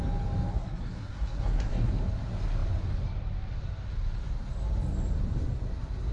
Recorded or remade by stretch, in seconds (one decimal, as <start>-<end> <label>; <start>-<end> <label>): 0.0-0.5 recorded; 0.5-1.9 remade; 1.9-6.1 recorded